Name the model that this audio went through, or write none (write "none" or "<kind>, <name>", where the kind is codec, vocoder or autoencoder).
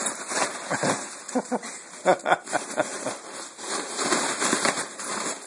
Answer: vocoder, BigVGAN v2